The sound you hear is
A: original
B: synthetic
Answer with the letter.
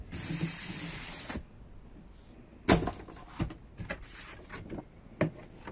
A